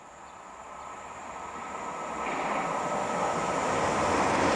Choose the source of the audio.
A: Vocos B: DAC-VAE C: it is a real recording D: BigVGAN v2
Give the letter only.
C